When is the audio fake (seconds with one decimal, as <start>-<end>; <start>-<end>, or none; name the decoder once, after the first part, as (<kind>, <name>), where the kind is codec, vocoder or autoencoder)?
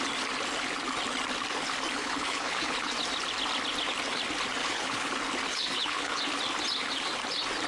2.0-2.9 (codec, HILCodec); 4.6-5.1; 5.5-6.2